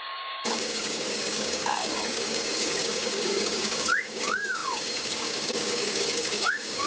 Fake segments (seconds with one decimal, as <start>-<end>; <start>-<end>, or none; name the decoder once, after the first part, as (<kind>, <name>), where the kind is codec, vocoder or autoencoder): 0.0-6.9 (codec, DAC)